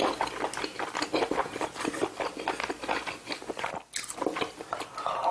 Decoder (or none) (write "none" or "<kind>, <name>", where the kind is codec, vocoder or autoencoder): none